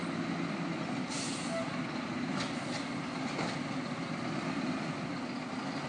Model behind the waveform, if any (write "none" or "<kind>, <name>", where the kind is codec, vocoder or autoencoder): none